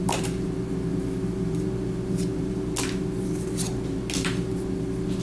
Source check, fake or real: real